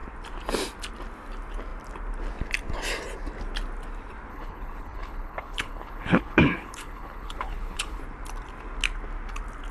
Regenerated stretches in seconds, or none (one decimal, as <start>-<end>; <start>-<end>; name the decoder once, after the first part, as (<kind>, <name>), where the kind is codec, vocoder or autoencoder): 4.3-8.0 (codec, HILCodec)